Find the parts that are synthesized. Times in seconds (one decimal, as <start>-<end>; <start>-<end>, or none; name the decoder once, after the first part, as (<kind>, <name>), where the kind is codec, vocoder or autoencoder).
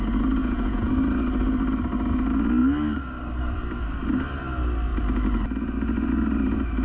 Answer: 0.4-0.9 (vocoder, Vocos)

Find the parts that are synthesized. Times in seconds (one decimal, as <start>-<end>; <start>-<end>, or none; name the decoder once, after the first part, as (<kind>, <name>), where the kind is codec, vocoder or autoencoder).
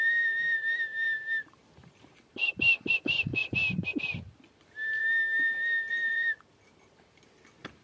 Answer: 0.0-3.4 (vocoder, BigVGAN v2); 4.2-5.0; 5.9-7.8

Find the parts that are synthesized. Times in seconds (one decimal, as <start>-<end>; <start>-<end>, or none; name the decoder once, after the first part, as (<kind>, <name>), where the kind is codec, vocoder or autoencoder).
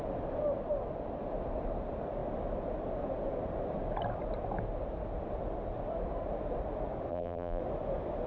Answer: 7.1-7.6 (vocoder, BigVGAN v2)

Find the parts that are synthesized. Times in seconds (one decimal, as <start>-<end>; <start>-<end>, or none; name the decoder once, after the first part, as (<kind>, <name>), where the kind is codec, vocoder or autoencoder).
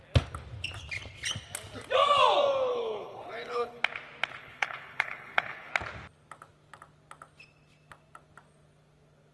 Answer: 2.7-3.8 (codec, HILCodec); 4.4-5.7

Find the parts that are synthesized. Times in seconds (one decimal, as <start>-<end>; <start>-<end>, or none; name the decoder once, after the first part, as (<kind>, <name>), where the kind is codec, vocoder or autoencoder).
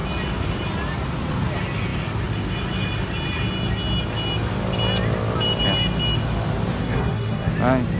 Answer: 6.8-7.5 (codec, SNAC)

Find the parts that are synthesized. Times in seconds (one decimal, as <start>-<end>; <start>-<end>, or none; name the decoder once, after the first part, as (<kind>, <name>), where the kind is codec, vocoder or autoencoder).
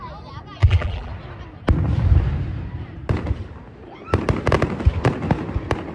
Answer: 0.6-1.1 (vocoder, BigVGAN v2)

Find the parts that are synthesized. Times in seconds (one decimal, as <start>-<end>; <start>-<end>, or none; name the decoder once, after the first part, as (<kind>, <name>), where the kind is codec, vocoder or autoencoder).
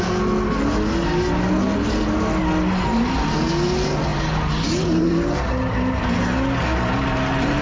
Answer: none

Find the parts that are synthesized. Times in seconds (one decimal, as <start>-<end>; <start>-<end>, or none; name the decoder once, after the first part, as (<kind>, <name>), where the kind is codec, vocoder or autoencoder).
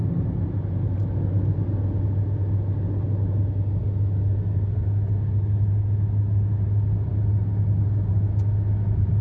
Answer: none